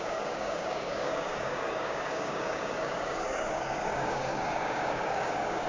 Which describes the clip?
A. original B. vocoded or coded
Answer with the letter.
B